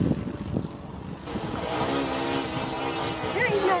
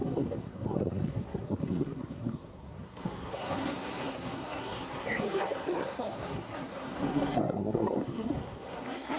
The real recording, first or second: first